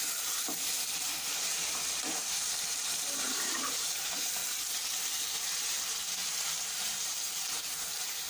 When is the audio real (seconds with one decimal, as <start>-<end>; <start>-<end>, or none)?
4.4-4.9